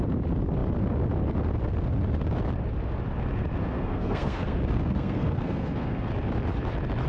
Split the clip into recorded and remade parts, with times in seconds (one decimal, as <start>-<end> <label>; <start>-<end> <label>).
0.0-3.6 recorded; 3.6-6.1 remade; 6.1-7.1 recorded